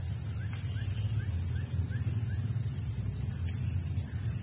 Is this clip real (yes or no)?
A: yes